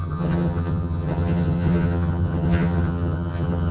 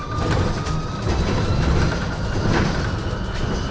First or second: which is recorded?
second